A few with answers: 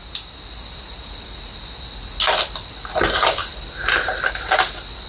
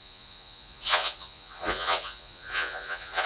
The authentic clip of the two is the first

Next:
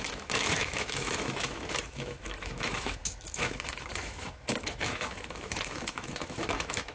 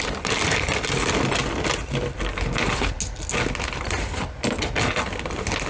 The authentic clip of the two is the second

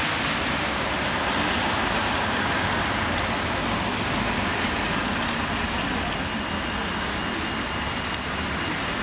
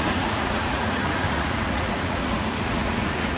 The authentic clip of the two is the first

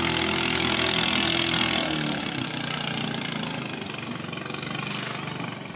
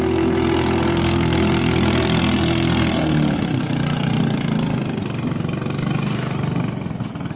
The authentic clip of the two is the first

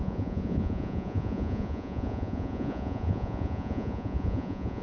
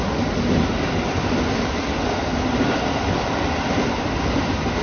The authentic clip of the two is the second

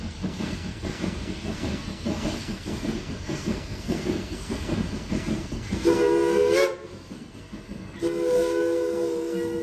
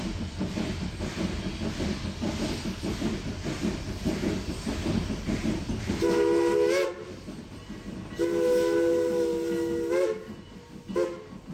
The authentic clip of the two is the second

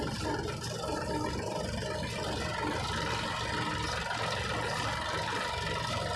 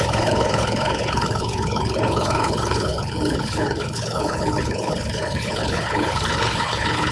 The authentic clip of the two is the first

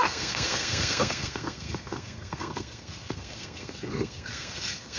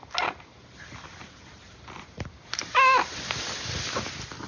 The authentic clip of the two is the second